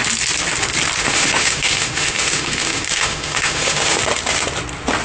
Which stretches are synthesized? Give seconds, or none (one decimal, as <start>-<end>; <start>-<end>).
1.0-4.0